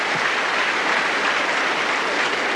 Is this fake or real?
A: real